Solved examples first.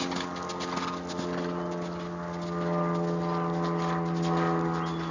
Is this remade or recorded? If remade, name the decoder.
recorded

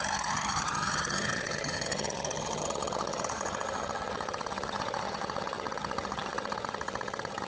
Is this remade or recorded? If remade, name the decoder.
remade, vocoder, HiFi-GAN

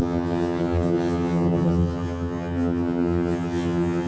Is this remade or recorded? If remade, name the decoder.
remade, vocoder, HiFi-GAN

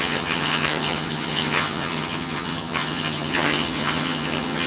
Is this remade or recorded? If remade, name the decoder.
remade, vocoder, HiFi-GAN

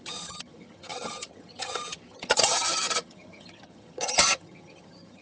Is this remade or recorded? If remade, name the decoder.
remade, vocoder, HiFi-GAN